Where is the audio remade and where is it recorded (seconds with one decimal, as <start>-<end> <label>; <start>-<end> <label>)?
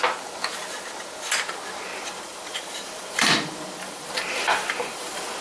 0.0-1.9 recorded; 1.9-5.4 remade